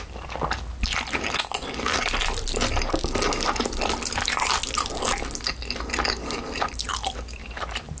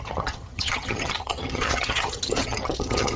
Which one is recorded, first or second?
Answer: first